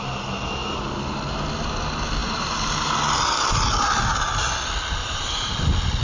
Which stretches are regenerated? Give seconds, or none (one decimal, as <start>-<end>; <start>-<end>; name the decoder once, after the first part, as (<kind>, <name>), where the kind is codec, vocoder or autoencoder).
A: 2.2-2.9 (vocoder, BigVGAN v2); 5.0-5.5